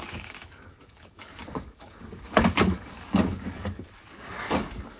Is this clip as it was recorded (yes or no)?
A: no